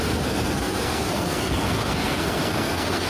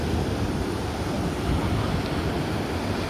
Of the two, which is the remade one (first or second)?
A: first